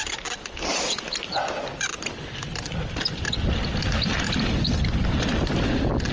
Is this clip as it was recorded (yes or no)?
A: yes